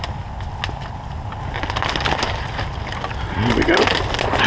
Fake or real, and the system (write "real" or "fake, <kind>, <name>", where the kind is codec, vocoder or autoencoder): real